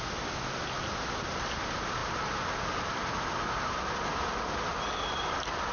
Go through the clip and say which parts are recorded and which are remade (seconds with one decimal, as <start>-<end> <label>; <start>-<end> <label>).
0.0-5.7 recorded